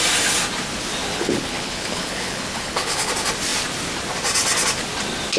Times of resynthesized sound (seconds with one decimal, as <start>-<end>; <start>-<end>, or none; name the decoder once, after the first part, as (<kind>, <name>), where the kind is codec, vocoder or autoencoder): 1.1-3.1 (codec, HILCodec)